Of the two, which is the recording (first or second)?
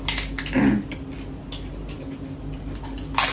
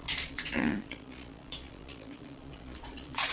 first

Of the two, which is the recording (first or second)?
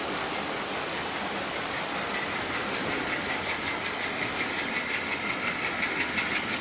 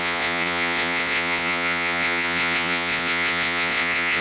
first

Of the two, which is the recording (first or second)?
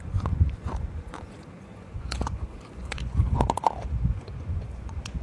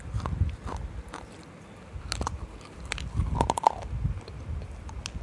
second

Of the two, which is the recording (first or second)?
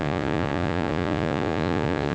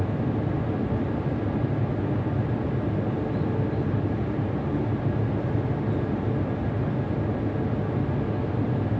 second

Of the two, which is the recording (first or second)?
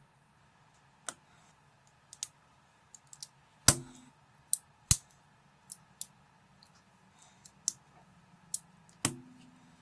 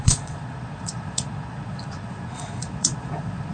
first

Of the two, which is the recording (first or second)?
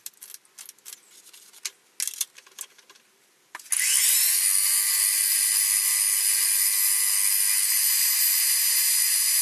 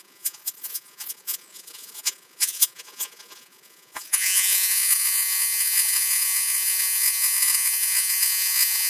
first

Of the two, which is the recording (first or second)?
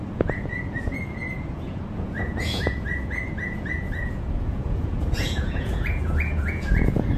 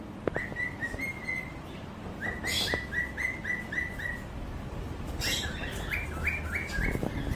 second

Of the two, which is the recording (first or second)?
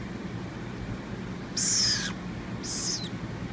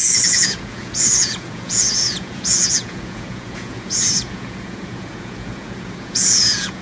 first